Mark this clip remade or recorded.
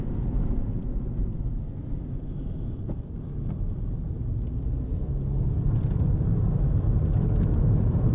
recorded